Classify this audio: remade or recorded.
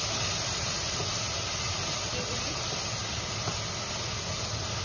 recorded